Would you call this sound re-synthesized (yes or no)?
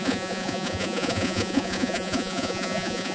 yes